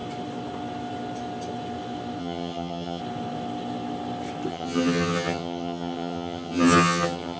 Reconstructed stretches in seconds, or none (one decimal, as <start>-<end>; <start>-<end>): 2.2-3.0; 4.5-7.4